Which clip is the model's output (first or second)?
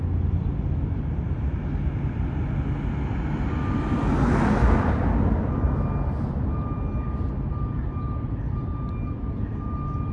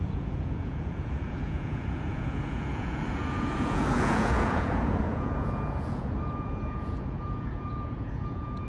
second